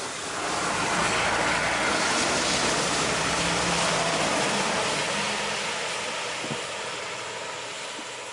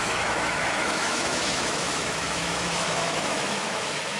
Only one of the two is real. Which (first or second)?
first